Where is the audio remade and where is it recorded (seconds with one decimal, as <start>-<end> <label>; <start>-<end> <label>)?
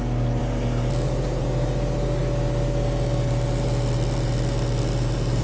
0.0-5.4 recorded